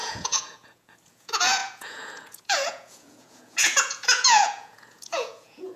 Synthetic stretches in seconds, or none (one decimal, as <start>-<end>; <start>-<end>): 0.0-5.8